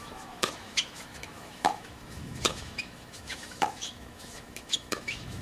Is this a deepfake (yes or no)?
yes